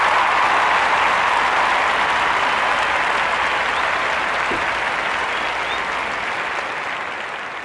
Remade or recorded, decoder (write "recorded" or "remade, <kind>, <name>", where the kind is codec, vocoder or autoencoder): recorded